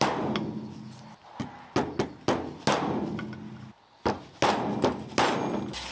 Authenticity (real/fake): real